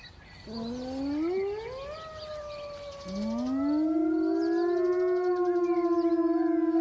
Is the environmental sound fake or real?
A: real